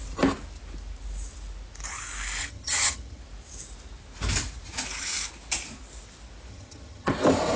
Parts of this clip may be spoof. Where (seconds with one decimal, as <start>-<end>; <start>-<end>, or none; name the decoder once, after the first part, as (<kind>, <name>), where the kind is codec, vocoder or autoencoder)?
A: 2.4-3.2 (vocoder, HiFi-GAN); 6.5-7.1